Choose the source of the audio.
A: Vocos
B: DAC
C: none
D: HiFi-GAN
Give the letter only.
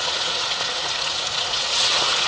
A